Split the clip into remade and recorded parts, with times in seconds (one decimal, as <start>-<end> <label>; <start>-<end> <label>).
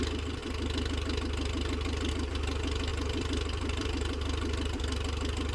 0.0-2.9 recorded; 2.9-4.8 remade; 4.8-5.5 recorded